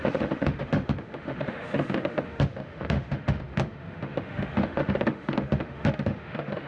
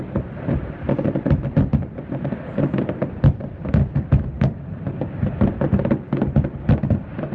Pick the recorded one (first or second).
second